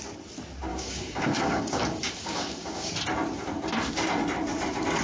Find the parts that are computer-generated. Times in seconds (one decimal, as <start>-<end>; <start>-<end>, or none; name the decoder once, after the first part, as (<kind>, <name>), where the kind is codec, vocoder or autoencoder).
0.7-2.9 (codec, DAC)